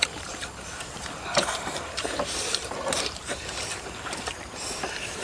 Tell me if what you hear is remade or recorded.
remade